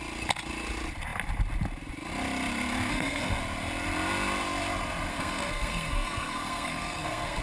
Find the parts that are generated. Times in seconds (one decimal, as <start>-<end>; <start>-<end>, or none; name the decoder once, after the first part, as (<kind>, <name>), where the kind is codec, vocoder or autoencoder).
2.9-3.4 (codec, SNAC); 5.1-7.4

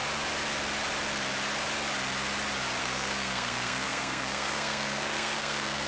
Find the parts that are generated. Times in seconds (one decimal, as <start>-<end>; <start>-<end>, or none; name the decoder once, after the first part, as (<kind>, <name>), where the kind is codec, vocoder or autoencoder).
2.8-5.9 (codec, SNAC)